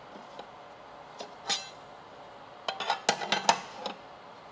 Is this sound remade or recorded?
recorded